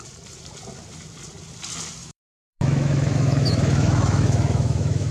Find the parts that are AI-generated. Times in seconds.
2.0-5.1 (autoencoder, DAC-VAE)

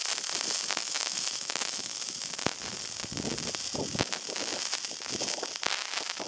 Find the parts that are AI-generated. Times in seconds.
0.8-2.3 (autoencoder, DAC-VAE)

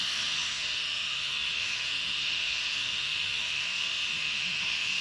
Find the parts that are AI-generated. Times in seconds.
0.0-5.0 (autoencoder, DAC-VAE)

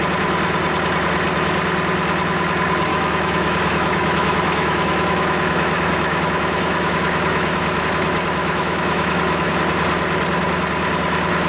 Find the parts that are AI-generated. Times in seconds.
2.9-7.8 (autoencoder, DAC-VAE); 8.4-9.5

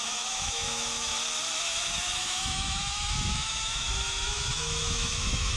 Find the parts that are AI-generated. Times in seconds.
0.0-1.1 (autoencoder, DAC-VAE); 1.6-5.6

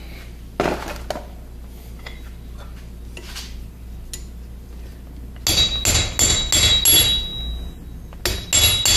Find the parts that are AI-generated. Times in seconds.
none